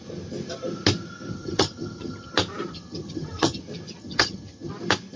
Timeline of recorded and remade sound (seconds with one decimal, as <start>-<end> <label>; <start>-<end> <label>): 0.0-1.3 recorded; 1.3-2.3 remade; 2.3-2.7 recorded; 2.7-3.6 remade; 3.6-4.0 recorded; 4.0-4.7 remade; 4.7-5.2 recorded